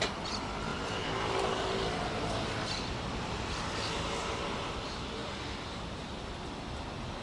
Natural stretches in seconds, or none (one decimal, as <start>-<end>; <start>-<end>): none